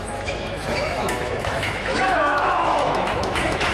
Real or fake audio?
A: fake